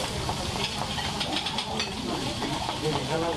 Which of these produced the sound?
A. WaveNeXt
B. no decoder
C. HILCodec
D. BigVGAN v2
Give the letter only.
D